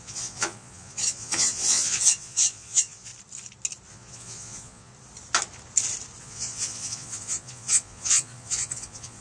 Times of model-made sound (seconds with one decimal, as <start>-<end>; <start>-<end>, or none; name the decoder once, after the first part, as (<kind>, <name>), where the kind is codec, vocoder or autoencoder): 0.0-3.1 (vocoder, Vocos); 3.9-4.9; 6.2-9.2